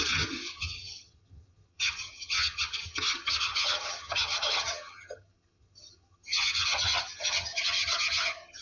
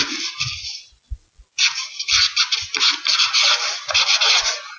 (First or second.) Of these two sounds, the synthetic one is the first